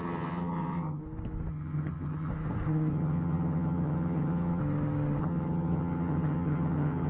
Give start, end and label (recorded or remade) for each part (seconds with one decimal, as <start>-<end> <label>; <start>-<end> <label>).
0.0-1.0 remade; 1.0-1.5 recorded; 1.5-2.3 remade; 2.3-2.9 recorded; 2.9-4.6 remade; 4.6-5.2 recorded; 5.2-7.1 remade